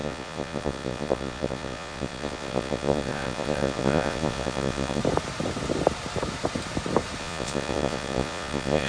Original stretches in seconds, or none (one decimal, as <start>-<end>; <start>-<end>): 5.0-7.2